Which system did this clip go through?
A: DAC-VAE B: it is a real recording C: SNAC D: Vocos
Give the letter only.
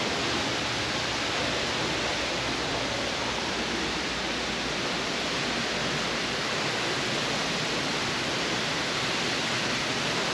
B